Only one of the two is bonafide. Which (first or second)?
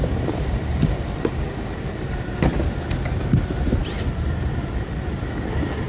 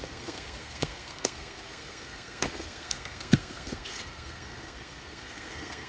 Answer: first